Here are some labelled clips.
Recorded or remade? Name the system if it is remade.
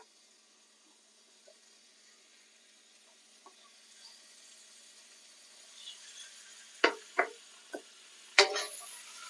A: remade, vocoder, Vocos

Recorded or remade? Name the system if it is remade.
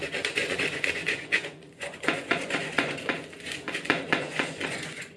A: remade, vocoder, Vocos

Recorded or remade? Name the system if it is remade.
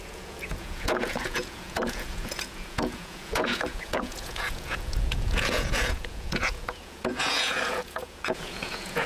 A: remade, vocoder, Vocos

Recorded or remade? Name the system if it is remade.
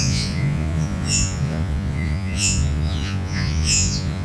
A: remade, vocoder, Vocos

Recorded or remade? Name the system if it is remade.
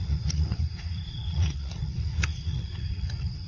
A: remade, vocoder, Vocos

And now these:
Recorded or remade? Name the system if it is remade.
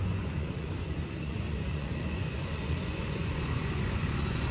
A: remade, vocoder, Vocos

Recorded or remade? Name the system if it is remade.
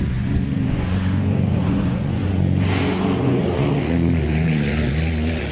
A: remade, vocoder, Vocos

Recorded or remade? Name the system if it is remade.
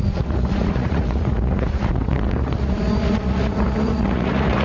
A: remade, vocoder, Vocos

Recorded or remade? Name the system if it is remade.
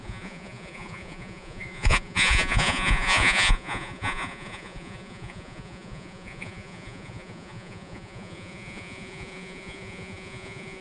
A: remade, vocoder, Vocos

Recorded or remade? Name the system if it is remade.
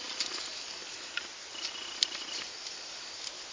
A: recorded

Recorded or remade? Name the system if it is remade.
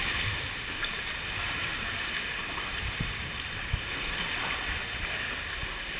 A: recorded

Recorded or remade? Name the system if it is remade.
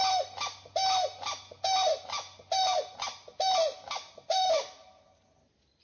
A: recorded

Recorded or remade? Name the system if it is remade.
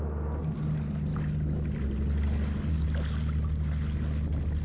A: recorded